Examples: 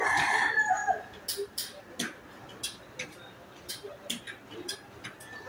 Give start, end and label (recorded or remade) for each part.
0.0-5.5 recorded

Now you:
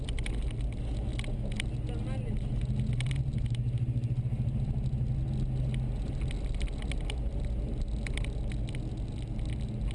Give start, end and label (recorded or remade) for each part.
0.0-9.9 recorded